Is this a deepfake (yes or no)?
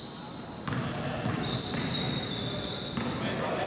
no